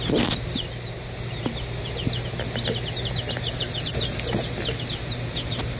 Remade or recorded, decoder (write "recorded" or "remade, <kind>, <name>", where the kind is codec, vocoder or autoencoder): recorded